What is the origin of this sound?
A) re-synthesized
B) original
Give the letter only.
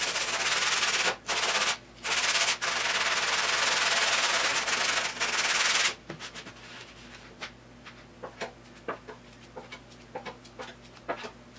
B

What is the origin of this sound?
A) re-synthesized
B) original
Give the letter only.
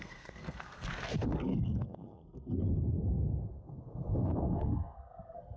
A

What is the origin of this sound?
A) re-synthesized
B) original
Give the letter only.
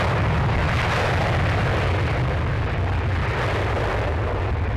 B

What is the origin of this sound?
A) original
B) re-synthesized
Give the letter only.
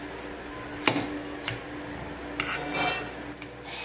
A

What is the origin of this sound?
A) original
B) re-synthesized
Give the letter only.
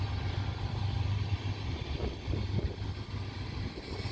A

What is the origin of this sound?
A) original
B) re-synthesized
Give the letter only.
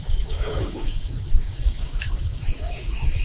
B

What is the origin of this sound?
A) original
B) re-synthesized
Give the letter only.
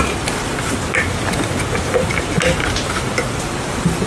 A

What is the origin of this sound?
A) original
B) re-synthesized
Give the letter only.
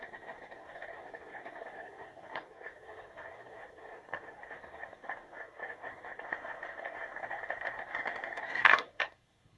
B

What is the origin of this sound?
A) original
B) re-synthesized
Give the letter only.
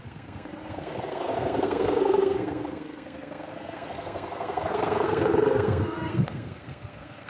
B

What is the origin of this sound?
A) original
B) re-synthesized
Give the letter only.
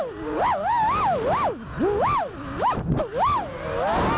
A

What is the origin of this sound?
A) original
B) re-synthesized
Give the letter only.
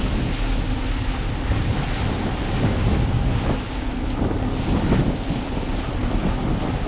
A